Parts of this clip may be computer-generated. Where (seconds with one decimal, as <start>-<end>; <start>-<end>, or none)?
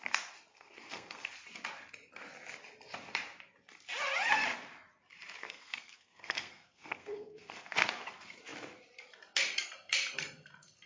0.5-1.3; 5.4-7.7